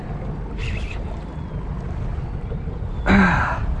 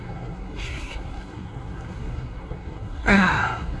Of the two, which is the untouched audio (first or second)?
first